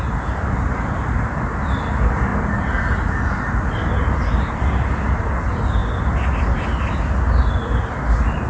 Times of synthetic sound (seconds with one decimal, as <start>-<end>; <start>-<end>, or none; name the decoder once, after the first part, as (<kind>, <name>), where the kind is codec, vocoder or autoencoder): none